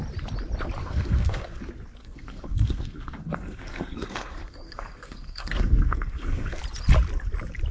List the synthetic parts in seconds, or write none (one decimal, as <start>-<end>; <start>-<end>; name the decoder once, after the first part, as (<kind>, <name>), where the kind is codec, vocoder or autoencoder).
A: 0.8-1.6 (codec, SNAC); 2.0-6.6